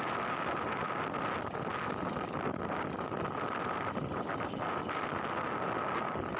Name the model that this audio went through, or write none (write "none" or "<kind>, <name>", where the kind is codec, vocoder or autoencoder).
none